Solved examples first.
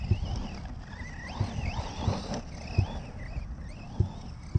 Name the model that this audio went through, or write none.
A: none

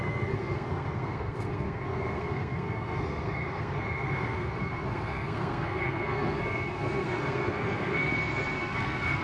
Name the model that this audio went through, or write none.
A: codec, SNAC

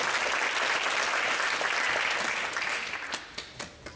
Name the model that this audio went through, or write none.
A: none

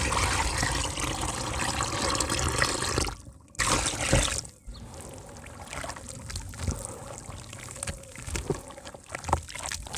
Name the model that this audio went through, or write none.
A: none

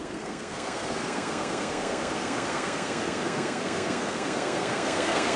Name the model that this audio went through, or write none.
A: codec, SNAC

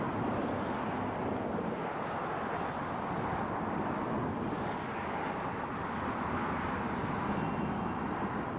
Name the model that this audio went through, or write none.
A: none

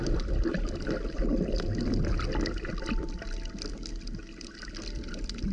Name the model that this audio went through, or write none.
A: none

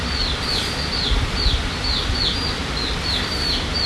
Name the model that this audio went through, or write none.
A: none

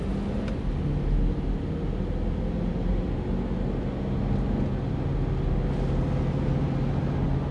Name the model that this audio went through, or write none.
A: none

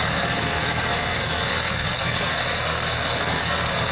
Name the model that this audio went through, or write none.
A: codec, SNAC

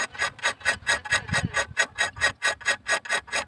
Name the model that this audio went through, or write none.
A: none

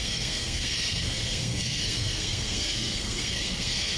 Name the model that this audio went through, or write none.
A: codec, SNAC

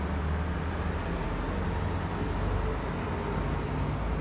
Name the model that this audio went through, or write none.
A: none